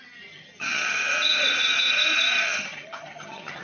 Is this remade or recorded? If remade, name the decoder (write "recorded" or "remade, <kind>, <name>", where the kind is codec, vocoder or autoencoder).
remade, vocoder, HiFi-GAN